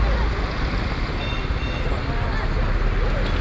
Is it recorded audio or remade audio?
recorded